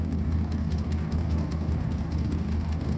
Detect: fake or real fake